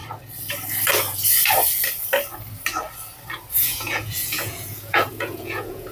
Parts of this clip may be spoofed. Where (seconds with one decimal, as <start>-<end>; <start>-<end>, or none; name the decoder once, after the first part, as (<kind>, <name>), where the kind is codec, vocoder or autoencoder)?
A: 3.5-5.9 (vocoder, Vocos)